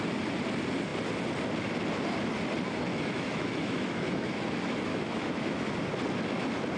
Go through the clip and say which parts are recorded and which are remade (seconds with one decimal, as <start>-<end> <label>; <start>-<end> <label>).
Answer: 0.0-2.9 recorded; 2.9-4.4 remade; 4.4-4.9 recorded; 4.9-5.7 remade; 5.7-6.8 recorded